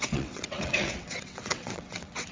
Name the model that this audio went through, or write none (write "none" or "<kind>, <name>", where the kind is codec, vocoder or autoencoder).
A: vocoder, WaveNeXt